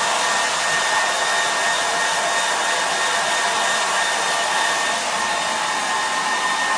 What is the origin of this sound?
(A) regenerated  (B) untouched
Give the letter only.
B